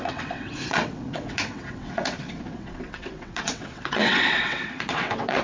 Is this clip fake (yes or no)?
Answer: yes